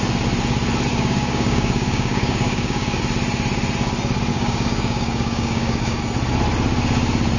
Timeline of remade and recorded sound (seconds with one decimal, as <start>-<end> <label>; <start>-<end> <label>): 0.0-0.9 recorded; 0.9-3.0 remade; 3.0-4.3 recorded; 4.3-6.0 remade; 6.0-7.4 recorded